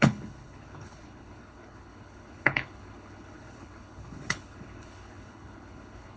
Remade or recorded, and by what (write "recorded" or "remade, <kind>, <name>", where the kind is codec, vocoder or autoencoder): remade, codec, HILCodec